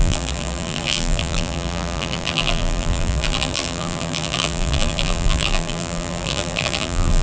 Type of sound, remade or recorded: remade